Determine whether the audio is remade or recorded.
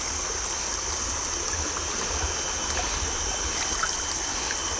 recorded